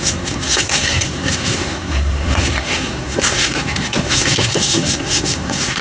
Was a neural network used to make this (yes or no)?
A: yes